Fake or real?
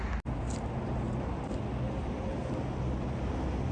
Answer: real